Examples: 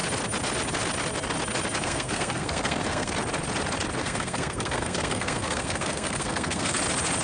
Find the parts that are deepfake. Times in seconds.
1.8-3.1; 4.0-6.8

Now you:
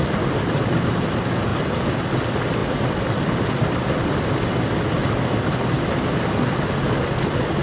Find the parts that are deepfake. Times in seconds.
none

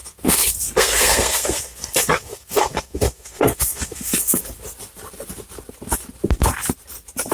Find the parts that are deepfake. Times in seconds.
0.0-4.4

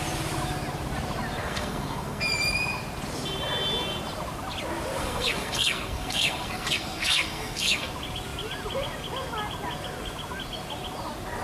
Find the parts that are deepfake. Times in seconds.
1.4-2.2; 5.0-7.9